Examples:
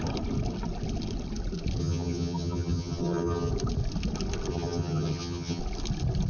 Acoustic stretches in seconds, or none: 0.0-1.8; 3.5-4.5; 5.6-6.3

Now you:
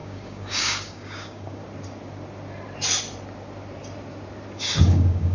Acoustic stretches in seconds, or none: 1.6-4.8

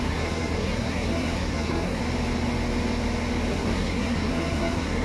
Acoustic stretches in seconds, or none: 2.0-3.5

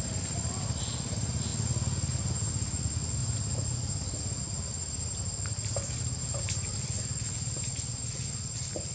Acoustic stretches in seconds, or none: 0.0-8.9

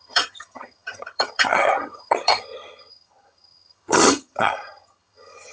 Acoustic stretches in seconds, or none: none

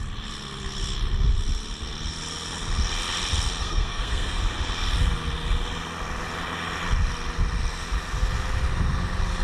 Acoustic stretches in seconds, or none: 0.0-3.6; 4.4-9.4

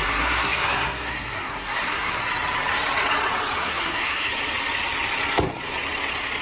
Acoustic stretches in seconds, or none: 2.2-3.6; 4.3-6.4

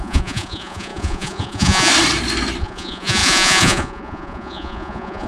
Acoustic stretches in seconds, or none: 1.9-2.6